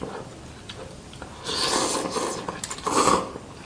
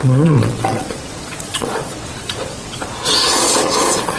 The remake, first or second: second